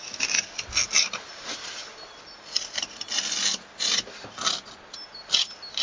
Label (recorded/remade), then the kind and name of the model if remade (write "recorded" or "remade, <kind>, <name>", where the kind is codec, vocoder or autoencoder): recorded